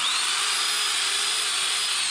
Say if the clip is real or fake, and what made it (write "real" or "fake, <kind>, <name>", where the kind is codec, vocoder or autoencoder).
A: real